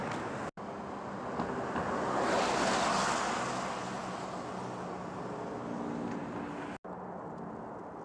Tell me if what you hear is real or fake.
real